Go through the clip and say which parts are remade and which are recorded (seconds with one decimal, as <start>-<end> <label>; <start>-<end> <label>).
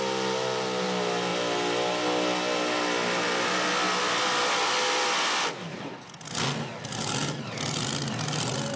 0.0-8.8 recorded